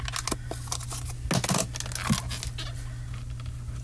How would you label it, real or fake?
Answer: real